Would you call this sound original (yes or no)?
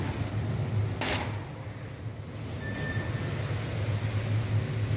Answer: yes